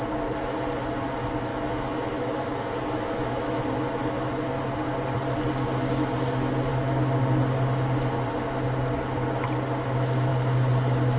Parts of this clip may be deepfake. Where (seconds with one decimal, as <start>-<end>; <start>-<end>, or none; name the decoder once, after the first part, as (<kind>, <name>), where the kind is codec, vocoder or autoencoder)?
1.5-3.6 (autoencoder, DAC-VAE)